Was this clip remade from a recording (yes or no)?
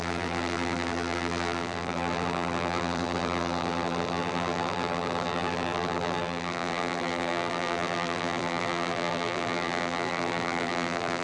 yes